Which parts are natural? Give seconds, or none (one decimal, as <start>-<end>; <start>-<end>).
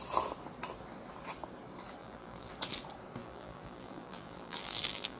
0.0-2.0; 2.5-3.2